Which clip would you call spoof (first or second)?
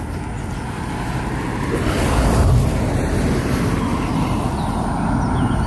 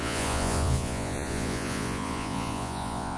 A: second